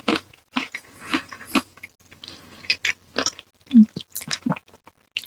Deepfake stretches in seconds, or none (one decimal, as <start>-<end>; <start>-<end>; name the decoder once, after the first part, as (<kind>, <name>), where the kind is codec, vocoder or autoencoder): 0.0-1.9 (vocoder, Vocos)